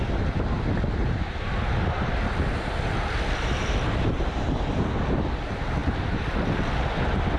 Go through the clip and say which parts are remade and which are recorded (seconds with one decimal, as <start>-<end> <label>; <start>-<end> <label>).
0.0-5.8 recorded; 5.8-6.8 remade; 6.8-7.4 recorded